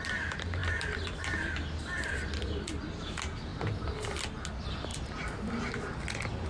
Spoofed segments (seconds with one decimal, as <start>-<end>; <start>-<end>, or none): 0.6-2.8; 4.9-5.5